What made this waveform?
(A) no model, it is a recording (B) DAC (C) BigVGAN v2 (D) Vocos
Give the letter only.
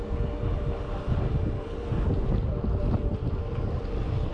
A